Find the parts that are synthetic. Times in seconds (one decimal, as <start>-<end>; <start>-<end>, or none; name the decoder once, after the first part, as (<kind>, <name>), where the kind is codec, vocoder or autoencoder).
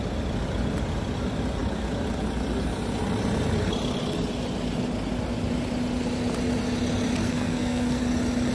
7.2-8.0 (codec, SNAC)